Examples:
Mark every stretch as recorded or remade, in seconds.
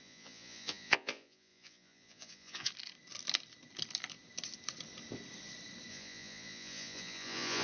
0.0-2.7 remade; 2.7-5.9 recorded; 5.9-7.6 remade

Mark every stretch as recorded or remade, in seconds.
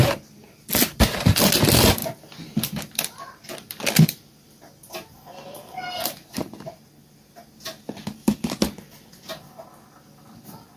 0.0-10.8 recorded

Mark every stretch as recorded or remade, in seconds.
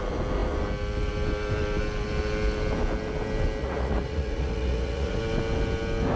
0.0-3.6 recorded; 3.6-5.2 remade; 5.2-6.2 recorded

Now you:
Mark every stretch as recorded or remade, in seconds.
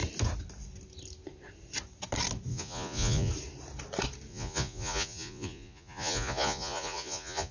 0.0-2.5 recorded; 2.5-3.3 remade; 3.3-4.3 recorded; 4.3-7.5 remade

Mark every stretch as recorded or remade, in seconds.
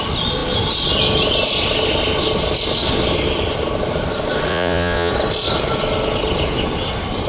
0.0-4.5 recorded; 4.5-5.1 remade; 5.1-7.3 recorded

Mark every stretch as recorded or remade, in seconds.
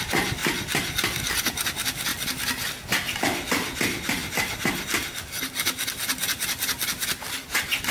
0.0-7.9 recorded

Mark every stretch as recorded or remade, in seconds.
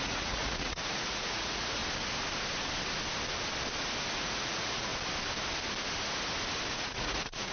0.0-1.8 remade; 1.8-4.2 recorded; 4.2-4.9 remade; 4.9-6.7 recorded; 6.7-7.5 remade